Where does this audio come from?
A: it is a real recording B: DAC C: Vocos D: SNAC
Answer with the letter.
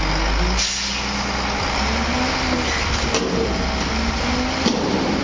A